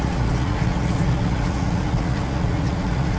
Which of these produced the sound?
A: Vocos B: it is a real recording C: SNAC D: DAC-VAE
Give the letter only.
A